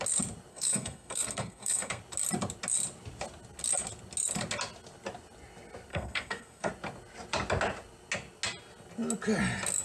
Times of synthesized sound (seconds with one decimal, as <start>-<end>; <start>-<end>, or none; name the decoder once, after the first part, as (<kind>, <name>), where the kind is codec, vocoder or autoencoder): 0.5-2.0 (codec, SNAC); 5.9-6.7